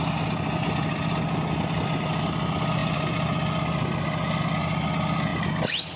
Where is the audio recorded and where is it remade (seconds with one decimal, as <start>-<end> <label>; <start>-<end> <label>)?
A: 0.0-2.8 recorded; 2.8-4.4 remade; 4.4-6.0 recorded